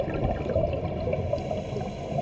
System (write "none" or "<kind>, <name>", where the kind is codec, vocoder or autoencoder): none